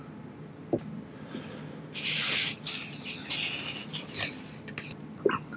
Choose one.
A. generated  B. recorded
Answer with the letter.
B